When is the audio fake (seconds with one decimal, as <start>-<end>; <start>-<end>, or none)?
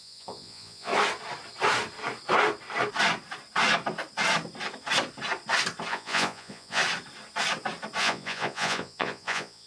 0.0-0.9; 5.9-6.8; 8.0-9.7